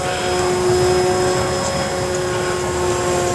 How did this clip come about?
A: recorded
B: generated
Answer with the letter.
A